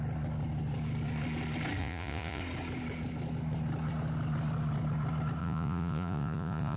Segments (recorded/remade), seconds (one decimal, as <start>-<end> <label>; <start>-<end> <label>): 0.0-1.8 recorded; 1.8-2.4 remade; 2.4-5.4 recorded; 5.4-6.8 remade